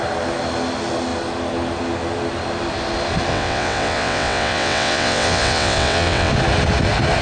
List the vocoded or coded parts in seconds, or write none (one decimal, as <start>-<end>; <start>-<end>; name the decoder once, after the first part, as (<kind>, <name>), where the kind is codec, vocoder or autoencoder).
3.3-6.3 (vocoder, WaveNeXt)